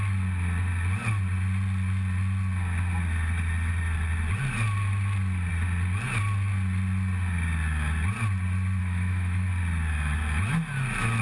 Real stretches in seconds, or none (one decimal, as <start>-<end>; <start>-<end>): 0.0-8.8; 9.5-11.2